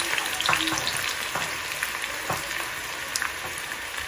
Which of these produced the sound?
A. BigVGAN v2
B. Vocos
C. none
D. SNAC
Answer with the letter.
C